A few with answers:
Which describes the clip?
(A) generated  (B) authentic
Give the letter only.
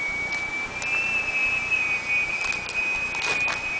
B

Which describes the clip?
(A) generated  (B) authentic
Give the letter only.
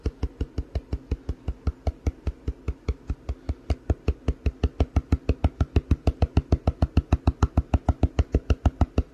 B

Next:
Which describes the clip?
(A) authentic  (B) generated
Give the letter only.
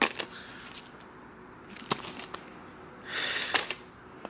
A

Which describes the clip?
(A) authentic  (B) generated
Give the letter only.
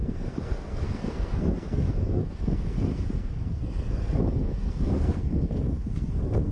B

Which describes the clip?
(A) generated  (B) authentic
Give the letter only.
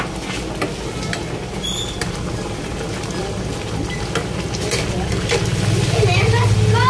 B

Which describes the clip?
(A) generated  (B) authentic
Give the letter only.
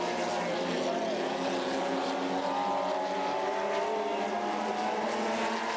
B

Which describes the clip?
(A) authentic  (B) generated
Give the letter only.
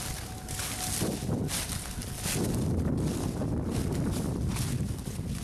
A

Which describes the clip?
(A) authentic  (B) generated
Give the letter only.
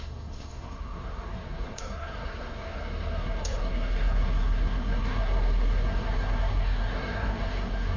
B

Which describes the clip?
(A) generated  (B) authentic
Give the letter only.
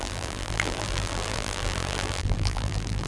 A